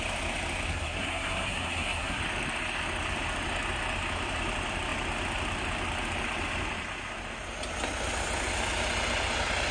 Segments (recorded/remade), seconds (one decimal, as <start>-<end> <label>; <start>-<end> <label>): 0.0-0.7 recorded; 0.7-2.2 remade; 2.2-9.7 recorded